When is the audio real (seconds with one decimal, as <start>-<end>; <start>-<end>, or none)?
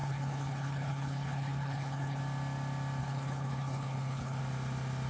2.2-3.0; 4.4-5.1